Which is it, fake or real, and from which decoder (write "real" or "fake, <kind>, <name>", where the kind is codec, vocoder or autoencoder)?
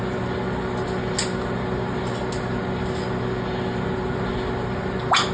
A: real